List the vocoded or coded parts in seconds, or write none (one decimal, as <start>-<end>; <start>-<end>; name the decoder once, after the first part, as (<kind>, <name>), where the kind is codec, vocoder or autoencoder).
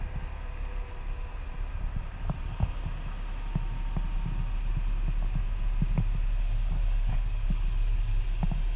6.8-8.2 (codec, DAC)